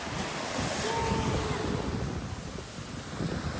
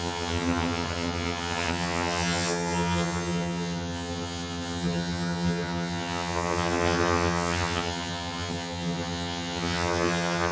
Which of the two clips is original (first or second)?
first